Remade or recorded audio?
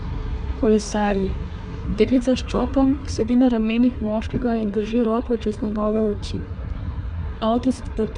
remade